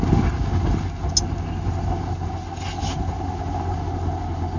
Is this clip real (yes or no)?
yes